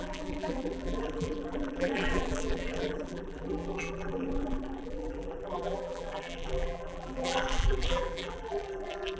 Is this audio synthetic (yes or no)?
yes